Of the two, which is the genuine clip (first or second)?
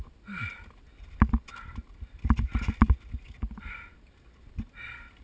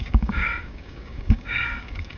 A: first